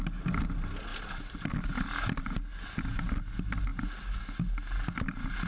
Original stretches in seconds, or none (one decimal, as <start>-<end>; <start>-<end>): 0.0-5.5